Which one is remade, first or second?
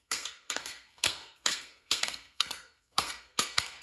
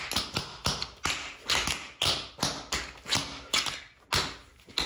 first